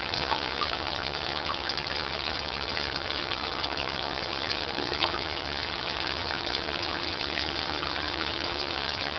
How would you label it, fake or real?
fake